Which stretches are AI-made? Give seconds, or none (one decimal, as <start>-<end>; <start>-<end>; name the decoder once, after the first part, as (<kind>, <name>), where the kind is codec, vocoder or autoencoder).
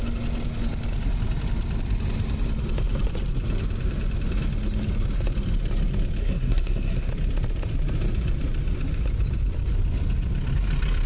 6.2-7.1 (codec, SNAC)